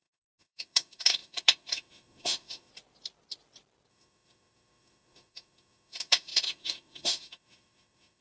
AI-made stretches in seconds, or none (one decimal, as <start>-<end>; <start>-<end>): 0.0-2.7; 3.9-8.2